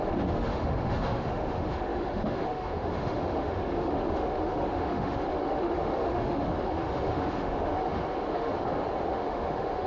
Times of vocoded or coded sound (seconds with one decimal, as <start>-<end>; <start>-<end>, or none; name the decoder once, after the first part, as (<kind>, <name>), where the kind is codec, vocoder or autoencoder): 0.0-8.5 (autoencoder, DAC-VAE); 9.1-9.9